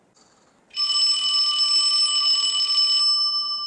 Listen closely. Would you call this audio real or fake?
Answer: real